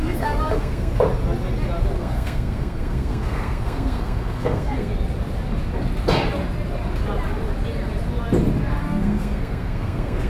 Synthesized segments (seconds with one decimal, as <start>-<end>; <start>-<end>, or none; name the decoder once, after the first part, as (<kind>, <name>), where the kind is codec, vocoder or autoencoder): 0.0-0.9 (codec, SNAC); 1.9-4.9; 8.8-10.3